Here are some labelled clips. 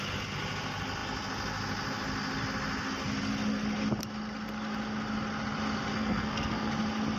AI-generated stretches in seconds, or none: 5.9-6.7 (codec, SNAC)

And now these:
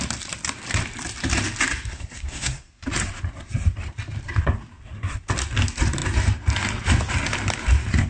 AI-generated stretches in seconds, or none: 1.9-2.8 (codec, SNAC)